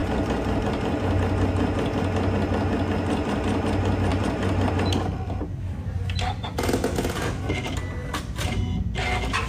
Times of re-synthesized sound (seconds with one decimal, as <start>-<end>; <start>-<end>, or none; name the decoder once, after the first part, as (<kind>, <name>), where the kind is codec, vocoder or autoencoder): 0.0-0.6 (vocoder, BigVGAN v2); 4.1-4.7; 8.0-8.6